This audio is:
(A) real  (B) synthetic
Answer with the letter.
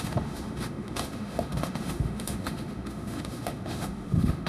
B